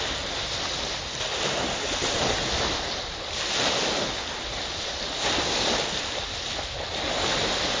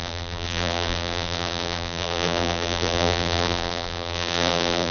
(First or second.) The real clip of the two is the first